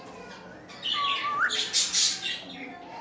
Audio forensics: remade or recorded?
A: recorded